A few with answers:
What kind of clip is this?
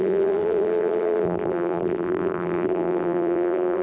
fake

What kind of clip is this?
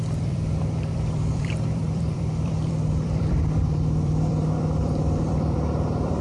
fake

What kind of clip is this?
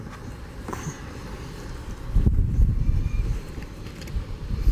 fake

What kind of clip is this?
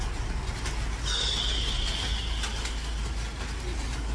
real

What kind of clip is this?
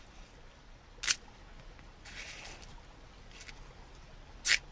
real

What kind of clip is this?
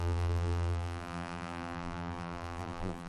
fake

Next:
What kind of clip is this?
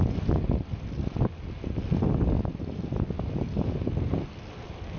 real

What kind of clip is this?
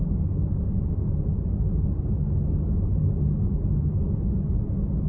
real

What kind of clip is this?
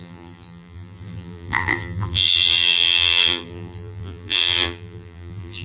fake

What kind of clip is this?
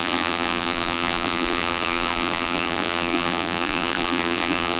fake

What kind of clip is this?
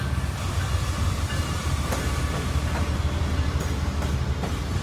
real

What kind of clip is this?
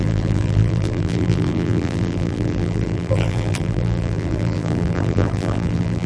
fake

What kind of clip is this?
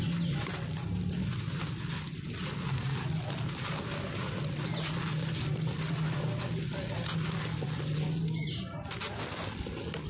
real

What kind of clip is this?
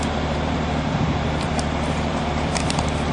fake